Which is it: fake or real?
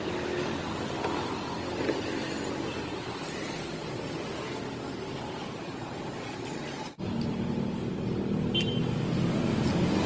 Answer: real